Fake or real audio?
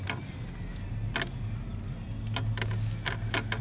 real